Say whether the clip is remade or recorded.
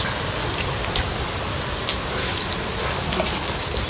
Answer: recorded